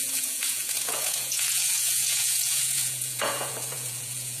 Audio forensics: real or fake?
fake